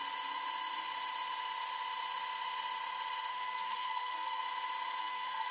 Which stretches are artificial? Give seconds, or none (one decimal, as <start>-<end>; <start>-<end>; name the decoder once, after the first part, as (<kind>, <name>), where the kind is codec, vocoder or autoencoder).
3.3-4.4 (codec, SNAC); 5.0-5.5